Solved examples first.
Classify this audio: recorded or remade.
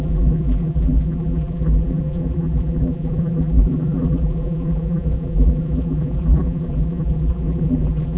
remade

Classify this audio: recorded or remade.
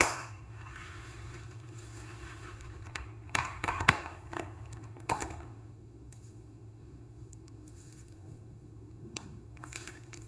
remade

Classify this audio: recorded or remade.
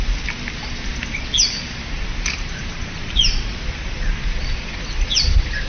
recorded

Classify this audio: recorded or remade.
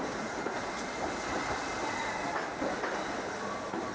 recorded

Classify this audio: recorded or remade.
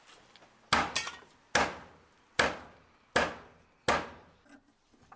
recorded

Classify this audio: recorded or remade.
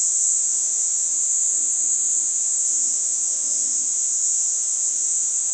remade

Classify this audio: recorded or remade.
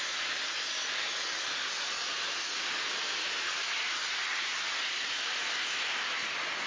recorded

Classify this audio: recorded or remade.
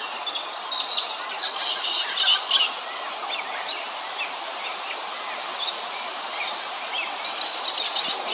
recorded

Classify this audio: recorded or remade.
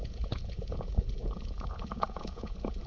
remade